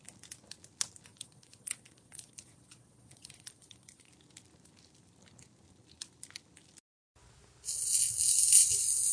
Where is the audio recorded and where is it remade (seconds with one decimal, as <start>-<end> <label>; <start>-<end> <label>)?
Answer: 0.0-1.1 recorded; 1.1-4.1 remade; 4.1-9.1 recorded